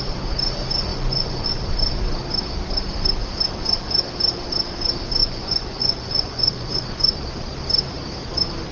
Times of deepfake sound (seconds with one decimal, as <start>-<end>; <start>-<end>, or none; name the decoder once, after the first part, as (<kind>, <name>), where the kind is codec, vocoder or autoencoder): 0.9-1.5 (vocoder, Vocos); 5.2-7.2